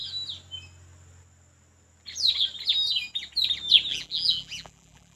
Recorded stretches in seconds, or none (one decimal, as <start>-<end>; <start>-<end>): 0.0-3.9